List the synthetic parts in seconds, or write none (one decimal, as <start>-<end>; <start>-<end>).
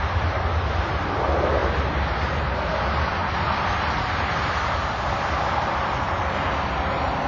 none